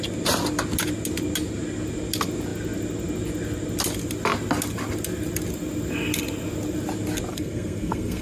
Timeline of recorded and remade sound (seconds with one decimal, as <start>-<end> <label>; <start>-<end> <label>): 0.0-7.3 recorded; 7.3-8.2 remade